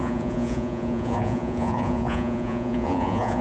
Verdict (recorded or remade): remade